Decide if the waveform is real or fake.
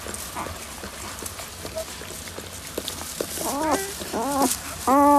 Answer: real